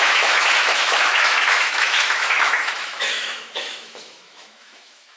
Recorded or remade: remade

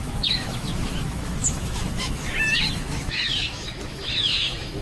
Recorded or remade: remade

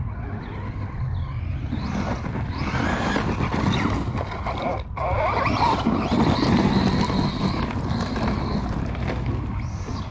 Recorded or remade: recorded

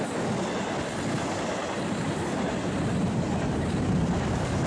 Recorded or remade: remade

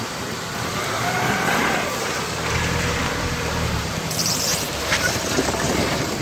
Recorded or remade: remade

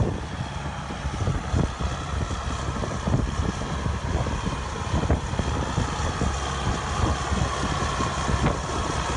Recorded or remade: recorded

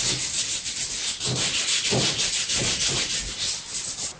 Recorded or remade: remade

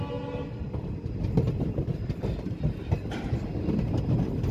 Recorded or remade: recorded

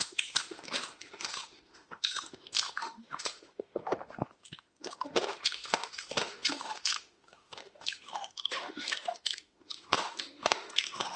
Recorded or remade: remade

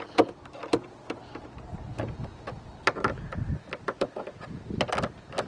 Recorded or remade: recorded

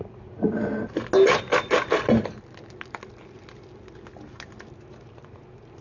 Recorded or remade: recorded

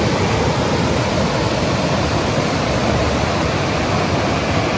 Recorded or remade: recorded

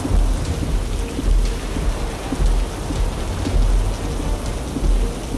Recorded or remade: recorded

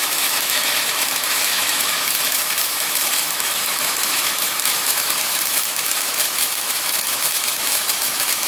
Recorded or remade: remade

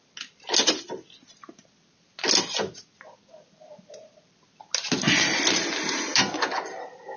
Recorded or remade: recorded